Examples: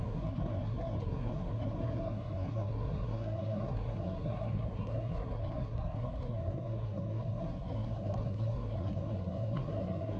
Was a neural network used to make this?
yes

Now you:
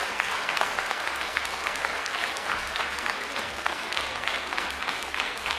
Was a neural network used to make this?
yes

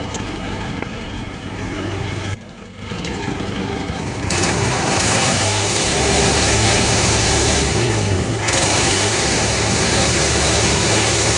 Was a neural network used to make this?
yes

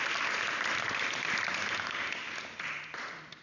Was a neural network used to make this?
no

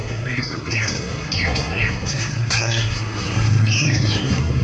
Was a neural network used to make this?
yes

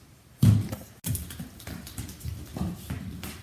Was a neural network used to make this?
no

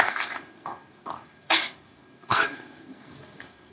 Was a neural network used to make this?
yes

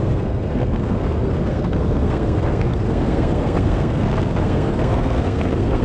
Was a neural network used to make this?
yes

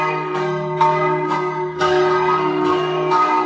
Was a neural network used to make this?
yes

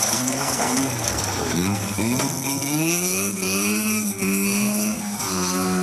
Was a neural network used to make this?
yes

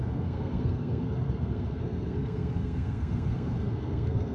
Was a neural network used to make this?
yes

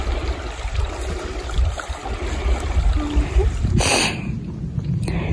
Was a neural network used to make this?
no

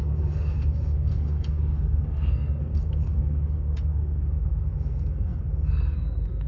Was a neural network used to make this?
yes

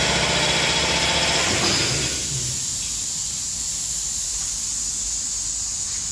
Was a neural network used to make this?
no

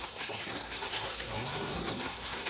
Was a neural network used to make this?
yes